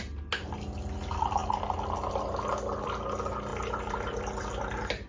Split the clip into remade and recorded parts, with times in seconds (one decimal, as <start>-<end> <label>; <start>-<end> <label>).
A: 0.0-3.5 recorded; 3.5-5.1 remade